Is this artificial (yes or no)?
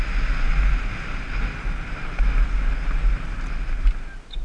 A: no